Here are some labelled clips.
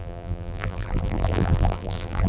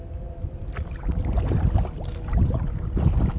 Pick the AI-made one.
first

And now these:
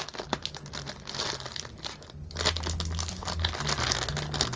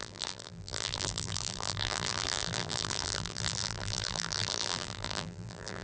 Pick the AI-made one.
second